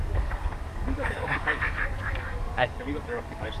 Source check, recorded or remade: remade